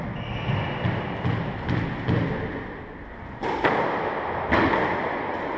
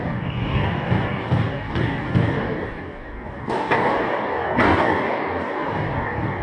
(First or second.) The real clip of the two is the first